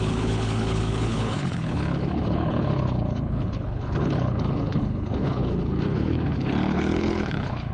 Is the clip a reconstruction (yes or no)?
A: yes